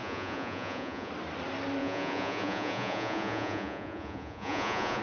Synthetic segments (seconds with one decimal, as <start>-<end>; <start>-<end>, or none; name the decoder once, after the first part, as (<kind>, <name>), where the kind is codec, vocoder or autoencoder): 0.0-1.1 (vocoder, Vocos); 1.8-5.0